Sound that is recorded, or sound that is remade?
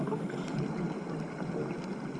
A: recorded